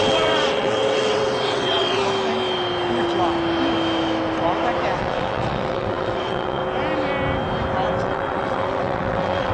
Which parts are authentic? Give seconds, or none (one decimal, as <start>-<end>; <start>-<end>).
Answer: 2.0-5.0; 6.6-8.0